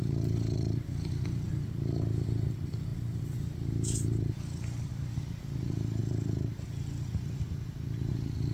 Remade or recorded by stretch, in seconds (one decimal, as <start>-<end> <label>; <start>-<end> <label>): 0.0-6.0 remade; 6.0-8.1 recorded; 8.1-8.5 remade